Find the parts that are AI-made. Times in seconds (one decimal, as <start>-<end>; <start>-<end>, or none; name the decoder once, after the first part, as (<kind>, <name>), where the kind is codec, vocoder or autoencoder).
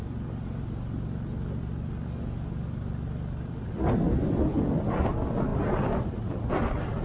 none